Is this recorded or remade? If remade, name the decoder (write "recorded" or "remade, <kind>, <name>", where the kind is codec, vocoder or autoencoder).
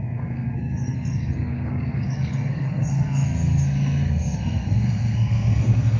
remade, codec, SNAC